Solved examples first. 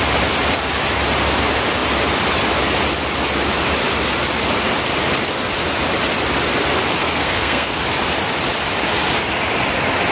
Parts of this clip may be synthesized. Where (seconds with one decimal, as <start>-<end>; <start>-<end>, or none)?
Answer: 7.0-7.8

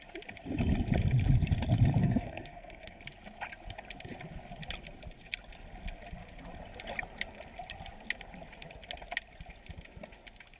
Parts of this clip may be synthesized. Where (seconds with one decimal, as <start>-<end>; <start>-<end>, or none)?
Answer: 2.0-3.0

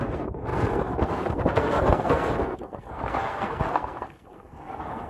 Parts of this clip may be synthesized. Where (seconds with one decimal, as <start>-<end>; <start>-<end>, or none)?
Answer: 0.0-5.1

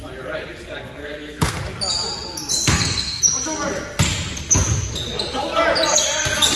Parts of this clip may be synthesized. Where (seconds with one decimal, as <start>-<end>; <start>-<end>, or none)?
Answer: 1.0-1.6; 2.7-3.2

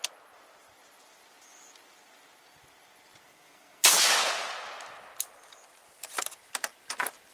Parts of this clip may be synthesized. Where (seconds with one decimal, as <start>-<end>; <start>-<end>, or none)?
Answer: 3.2-3.9

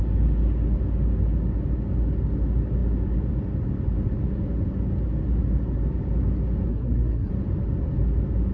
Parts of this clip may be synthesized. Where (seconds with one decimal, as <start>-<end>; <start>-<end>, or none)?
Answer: 6.7-7.3